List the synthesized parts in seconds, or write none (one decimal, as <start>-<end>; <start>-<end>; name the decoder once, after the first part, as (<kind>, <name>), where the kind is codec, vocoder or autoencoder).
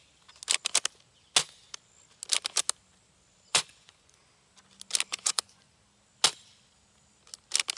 3.5-4.2 (vocoder, Vocos); 5.1-5.8